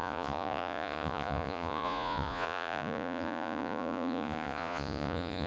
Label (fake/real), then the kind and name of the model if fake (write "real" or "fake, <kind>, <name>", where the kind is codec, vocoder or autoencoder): fake, vocoder, Vocos